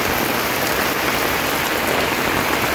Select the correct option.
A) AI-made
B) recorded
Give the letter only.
A